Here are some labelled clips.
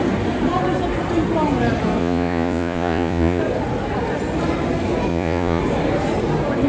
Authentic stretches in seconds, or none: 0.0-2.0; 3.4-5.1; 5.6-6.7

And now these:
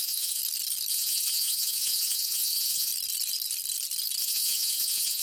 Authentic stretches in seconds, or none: 0.4-0.9; 2.9-4.2

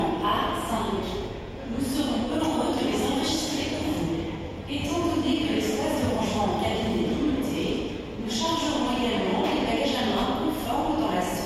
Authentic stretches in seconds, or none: 0.0-0.4; 2.7-4.5; 6.4-9.3; 9.8-11.5

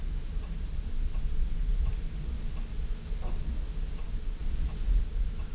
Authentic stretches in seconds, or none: 1.7-4.0; 4.4-5.0

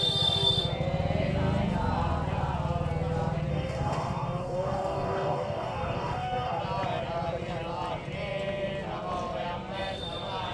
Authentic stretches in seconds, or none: 0.0-3.5; 6.6-10.5